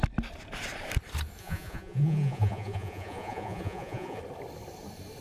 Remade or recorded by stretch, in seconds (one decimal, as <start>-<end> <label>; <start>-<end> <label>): 0.0-1.4 recorded; 1.4-4.2 remade; 4.2-5.2 recorded